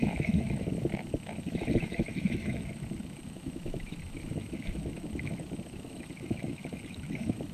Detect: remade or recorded remade